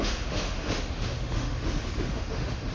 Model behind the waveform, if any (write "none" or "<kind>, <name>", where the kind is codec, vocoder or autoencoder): autoencoder, DAC-VAE